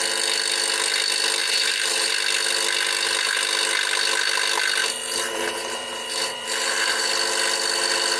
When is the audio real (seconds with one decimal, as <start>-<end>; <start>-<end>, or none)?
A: 0.0-1.4; 2.1-4.8; 7.1-8.2

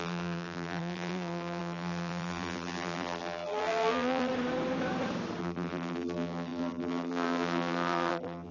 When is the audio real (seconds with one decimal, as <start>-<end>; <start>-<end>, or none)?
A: 4.3-5.4

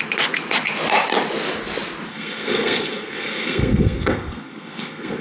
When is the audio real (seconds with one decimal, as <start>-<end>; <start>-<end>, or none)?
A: 0.0-2.1

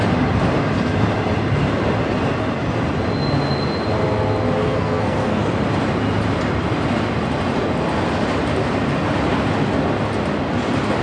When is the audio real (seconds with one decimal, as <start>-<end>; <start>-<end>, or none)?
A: 0.0-4.6; 5.4-11.0

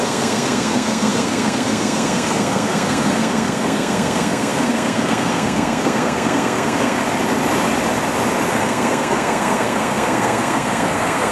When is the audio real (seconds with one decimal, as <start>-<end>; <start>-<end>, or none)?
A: 7.0-8.5

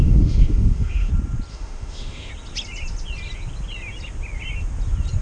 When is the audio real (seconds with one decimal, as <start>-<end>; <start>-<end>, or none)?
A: 1.1-1.5; 2.3-5.2